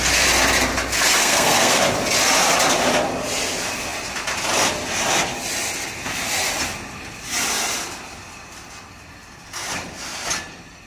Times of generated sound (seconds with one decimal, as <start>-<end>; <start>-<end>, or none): 1.2-1.8